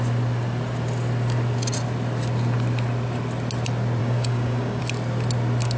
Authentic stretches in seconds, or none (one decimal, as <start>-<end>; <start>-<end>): 0.0-4.0; 4.8-5.8